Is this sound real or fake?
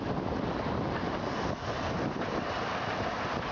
real